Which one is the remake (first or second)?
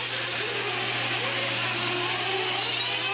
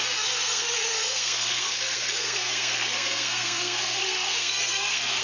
second